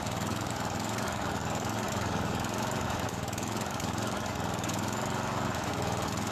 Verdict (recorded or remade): remade